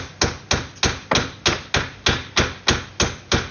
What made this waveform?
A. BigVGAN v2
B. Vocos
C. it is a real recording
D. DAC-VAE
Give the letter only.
C